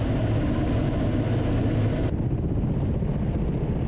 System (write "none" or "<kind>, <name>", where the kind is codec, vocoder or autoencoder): none